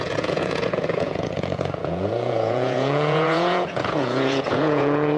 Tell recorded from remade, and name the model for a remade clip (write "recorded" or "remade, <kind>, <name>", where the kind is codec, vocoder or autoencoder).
remade, vocoder, Vocos